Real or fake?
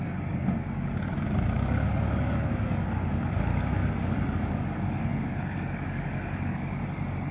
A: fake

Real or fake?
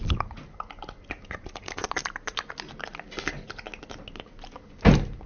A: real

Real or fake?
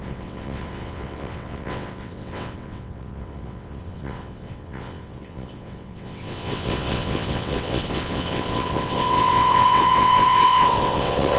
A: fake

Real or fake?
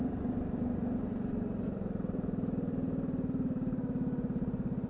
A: real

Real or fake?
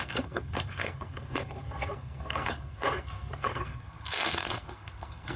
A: fake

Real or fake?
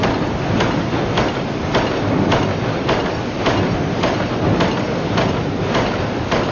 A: real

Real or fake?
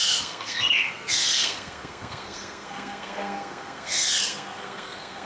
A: fake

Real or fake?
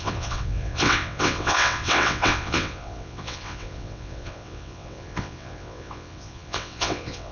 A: fake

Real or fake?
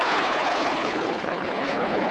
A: fake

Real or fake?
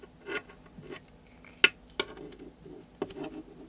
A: real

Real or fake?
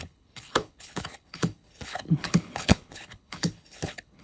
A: fake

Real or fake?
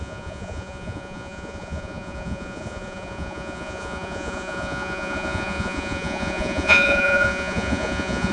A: fake